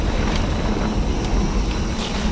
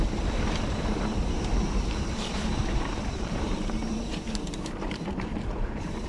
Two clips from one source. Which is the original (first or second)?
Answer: first